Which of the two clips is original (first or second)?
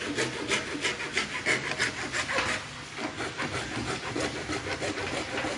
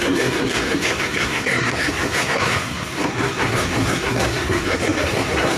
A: first